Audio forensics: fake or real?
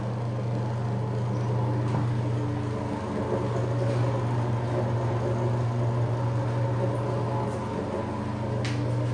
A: real